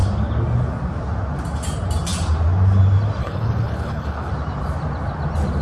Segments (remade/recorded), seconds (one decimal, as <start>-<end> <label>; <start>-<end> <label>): 0.0-3.2 recorded; 3.2-4.3 remade; 4.3-5.6 recorded